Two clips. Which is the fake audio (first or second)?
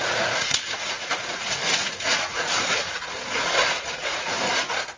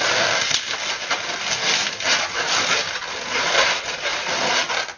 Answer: first